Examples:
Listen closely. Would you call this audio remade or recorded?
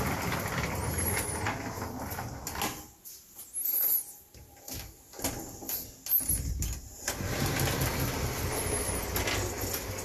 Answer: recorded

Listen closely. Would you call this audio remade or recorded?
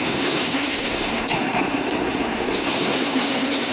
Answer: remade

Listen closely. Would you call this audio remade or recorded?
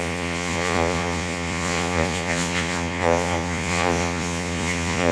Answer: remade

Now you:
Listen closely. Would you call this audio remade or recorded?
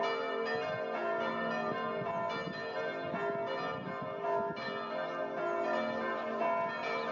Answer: recorded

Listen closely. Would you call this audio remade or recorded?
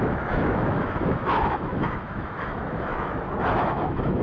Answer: remade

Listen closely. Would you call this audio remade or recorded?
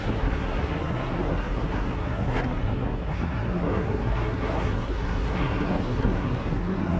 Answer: remade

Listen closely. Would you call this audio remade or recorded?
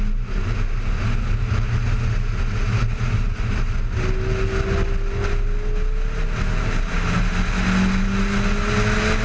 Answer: recorded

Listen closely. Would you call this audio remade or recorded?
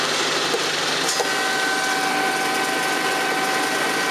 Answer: recorded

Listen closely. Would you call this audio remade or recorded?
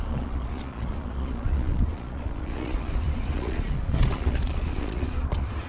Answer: remade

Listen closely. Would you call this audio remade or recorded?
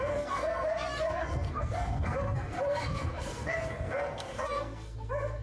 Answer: remade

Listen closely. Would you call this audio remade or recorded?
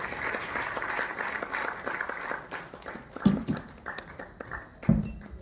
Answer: recorded